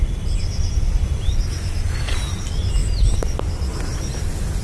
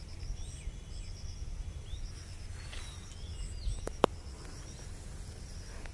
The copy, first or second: first